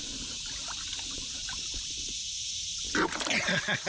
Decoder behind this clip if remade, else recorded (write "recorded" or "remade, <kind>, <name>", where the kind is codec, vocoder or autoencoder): recorded